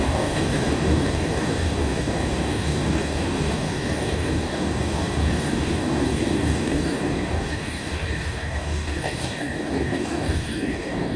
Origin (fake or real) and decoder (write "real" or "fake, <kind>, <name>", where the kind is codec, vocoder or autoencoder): fake, codec, DAC